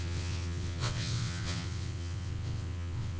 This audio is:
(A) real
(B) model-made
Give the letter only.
B